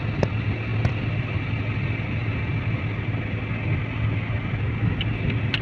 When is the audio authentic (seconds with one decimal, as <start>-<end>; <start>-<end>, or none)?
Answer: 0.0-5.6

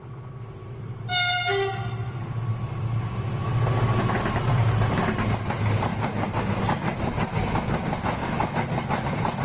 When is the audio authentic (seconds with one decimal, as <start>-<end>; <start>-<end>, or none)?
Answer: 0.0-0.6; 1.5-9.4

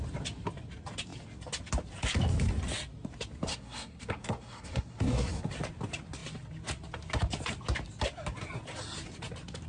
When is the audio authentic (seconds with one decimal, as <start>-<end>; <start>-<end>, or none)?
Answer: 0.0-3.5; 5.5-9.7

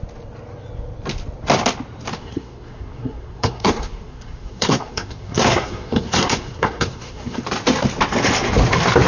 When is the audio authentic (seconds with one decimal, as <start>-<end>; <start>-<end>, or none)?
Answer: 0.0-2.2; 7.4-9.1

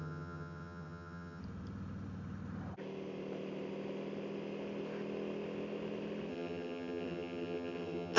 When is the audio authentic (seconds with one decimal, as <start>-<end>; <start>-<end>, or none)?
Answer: 1.4-6.3

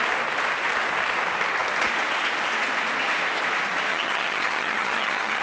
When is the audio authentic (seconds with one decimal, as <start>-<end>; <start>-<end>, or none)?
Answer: 0.0-3.9

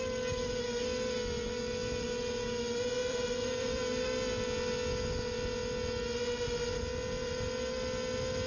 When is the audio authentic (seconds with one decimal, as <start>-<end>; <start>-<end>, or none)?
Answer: 0.0-3.0; 3.8-8.5